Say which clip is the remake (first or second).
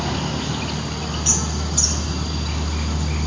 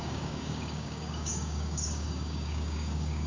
second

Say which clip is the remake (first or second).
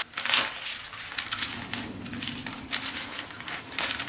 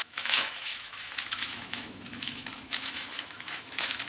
second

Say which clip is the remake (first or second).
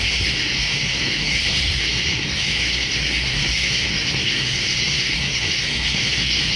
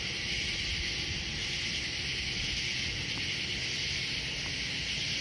first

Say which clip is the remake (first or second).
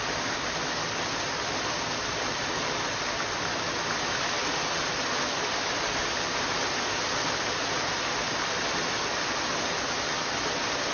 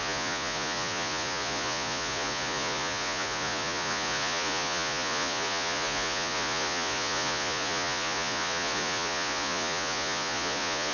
second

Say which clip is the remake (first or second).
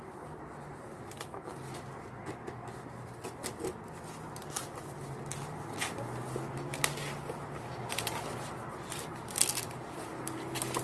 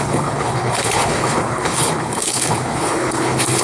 second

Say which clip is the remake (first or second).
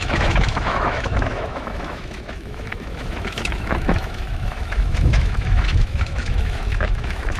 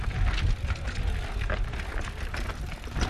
first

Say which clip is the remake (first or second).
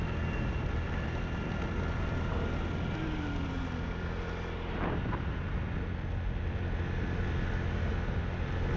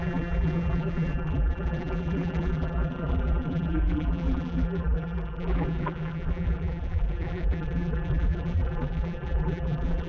second